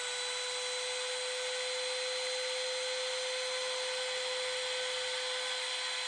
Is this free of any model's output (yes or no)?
yes